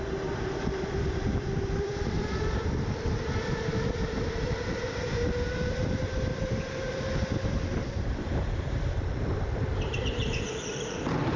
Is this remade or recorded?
remade